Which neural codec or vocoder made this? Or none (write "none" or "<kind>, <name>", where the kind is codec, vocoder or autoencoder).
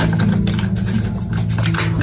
none